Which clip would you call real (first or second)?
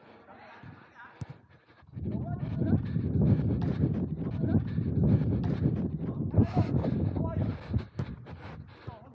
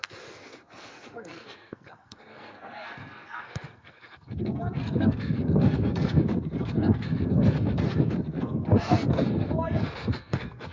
first